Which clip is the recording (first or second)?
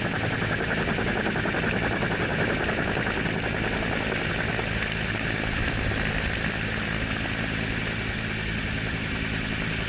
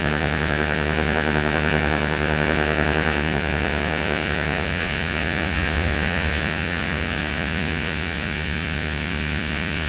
first